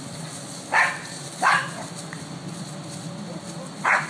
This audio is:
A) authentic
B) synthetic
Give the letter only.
A